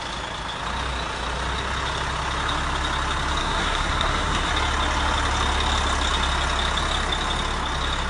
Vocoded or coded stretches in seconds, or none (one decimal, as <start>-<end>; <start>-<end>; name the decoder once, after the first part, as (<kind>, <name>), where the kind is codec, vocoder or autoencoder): 3.4-4.5 (codec, SNAC)